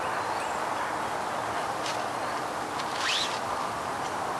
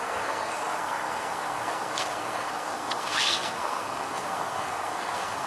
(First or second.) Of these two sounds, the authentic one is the first